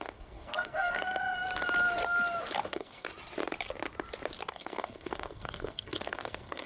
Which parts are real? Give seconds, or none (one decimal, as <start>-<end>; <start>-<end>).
1.2-2.7; 3.1-4.5